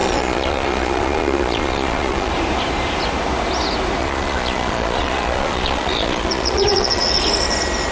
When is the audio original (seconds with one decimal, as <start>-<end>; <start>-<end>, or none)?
2.3-4.0; 7.0-7.9